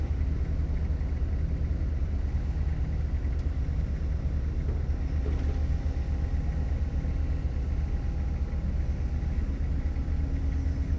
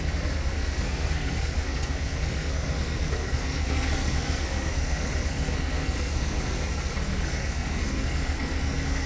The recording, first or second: first